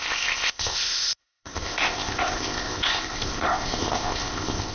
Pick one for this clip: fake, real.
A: fake